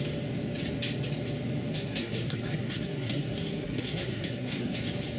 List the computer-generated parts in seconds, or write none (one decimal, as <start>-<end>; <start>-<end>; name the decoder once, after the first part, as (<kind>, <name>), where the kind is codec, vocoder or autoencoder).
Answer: 1.7-4.8 (codec, SNAC)